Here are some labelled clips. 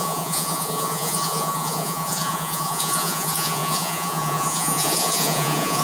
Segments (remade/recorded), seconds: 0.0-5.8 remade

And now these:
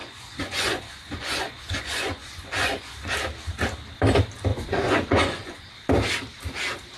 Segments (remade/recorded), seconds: 0.0-3.1 remade; 3.1-4.5 recorded; 4.5-5.7 remade; 5.7-7.0 recorded

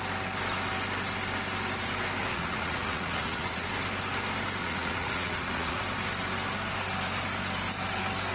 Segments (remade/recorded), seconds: 0.0-2.3 recorded; 2.3-3.7 remade; 3.7-4.6 recorded; 4.6-5.8 remade; 5.8-8.3 recorded

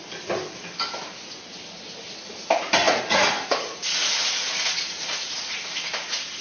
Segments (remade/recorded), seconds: 0.0-2.8 recorded; 2.8-6.4 remade

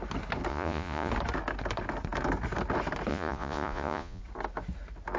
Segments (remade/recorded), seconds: 0.0-0.5 recorded; 0.5-1.1 remade; 1.1-3.1 recorded; 3.1-4.2 remade; 4.2-5.2 recorded

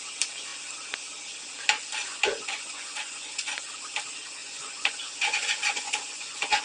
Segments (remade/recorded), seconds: 0.0-2.1 recorded; 2.1-3.7 remade; 3.7-4.4 recorded; 4.4-6.6 remade

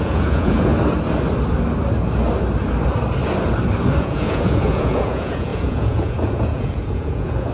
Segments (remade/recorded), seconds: 0.0-0.7 remade; 0.7-4.0 recorded; 4.0-7.5 remade